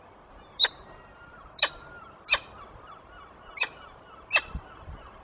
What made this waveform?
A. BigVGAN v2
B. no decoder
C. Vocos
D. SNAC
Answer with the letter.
B